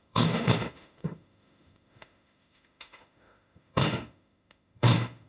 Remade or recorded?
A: remade